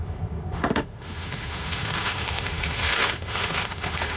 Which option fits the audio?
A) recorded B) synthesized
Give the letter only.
B